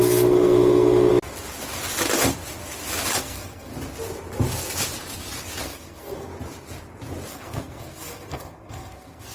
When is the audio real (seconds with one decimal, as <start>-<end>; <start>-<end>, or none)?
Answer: 1.1-3.1; 3.7-5.6; 6.3-7.3